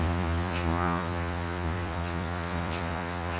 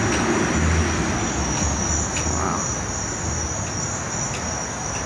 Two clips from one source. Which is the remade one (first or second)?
first